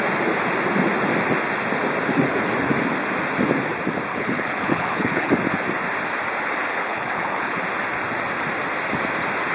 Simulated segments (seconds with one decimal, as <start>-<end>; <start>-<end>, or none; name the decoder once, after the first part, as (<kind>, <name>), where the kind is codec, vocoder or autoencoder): 4.1-5.3 (codec, HILCodec); 6.7-7.6